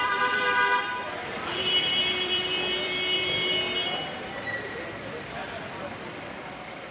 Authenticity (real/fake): fake